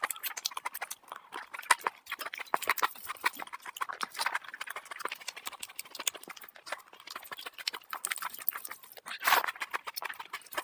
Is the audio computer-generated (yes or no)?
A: no